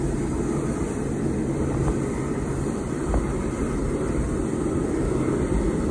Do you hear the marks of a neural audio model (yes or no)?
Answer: no